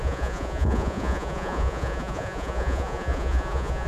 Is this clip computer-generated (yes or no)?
yes